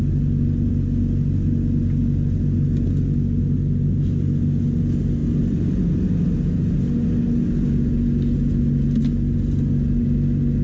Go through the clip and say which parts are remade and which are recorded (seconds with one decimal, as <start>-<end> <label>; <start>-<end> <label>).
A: 0.0-10.6 recorded